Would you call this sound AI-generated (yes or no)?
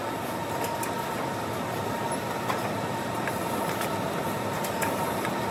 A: no